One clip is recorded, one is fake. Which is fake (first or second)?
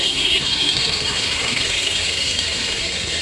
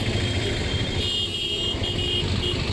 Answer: first